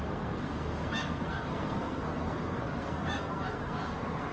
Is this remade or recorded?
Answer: remade